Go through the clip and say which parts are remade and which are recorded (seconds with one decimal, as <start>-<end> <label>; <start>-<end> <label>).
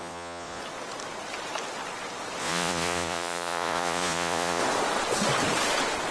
0.0-0.6 remade; 0.6-2.4 recorded; 2.4-4.6 remade; 4.6-6.1 recorded